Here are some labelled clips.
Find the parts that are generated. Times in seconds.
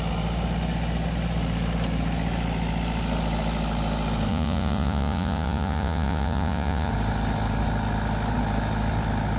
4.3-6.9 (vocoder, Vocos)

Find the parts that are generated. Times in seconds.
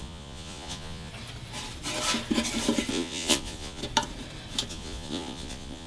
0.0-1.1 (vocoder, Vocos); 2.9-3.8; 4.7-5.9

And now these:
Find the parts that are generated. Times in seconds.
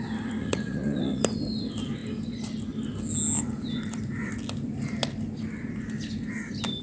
0.4-1.2 (vocoder, Vocos)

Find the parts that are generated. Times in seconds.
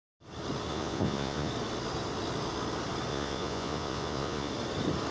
0.7-1.5 (vocoder, Vocos); 3.1-4.5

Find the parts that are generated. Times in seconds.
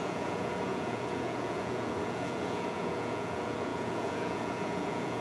0.0-5.2 (vocoder, Vocos)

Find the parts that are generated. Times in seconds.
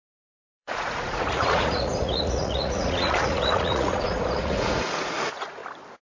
0.0-5.6 (vocoder, Vocos)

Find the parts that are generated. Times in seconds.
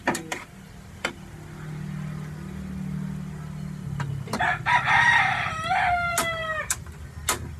none